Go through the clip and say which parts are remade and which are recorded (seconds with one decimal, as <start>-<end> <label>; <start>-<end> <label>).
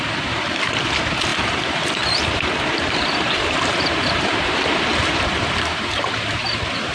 0.0-6.9 remade